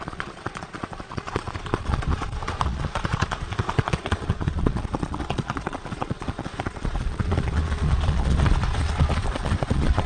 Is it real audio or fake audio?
fake